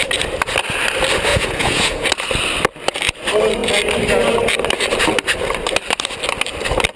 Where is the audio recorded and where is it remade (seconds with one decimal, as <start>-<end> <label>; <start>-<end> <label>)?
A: 0.0-1.3 recorded; 1.3-2.1 remade; 2.1-7.0 recorded

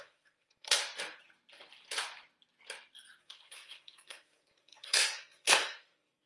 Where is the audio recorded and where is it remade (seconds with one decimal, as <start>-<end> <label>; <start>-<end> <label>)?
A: 0.0-0.8 remade; 0.8-3.2 recorded; 3.2-6.3 remade

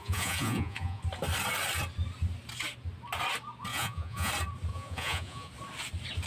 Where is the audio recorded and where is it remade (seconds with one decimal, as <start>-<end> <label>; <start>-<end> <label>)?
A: 0.0-1.0 remade; 1.0-3.7 recorded; 3.7-4.3 remade; 4.3-4.7 recorded; 4.7-5.5 remade; 5.5-6.3 recorded

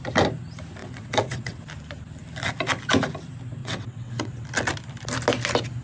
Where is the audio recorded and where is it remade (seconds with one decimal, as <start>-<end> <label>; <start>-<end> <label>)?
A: 0.0-0.8 recorded; 0.8-1.6 remade; 1.6-3.6 recorded; 3.6-4.3 remade; 4.3-5.8 recorded

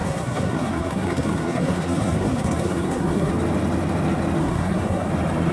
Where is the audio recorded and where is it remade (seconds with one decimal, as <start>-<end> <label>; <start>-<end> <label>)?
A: 0.0-3.3 remade; 3.3-4.4 recorded; 4.4-5.1 remade; 5.1-5.5 recorded